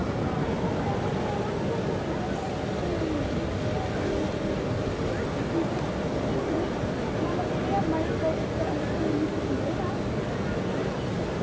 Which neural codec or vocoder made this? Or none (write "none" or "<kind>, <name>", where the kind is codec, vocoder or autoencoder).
none